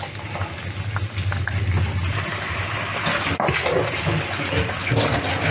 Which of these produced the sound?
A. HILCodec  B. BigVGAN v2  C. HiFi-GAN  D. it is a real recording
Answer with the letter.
D